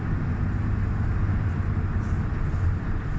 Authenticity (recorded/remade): recorded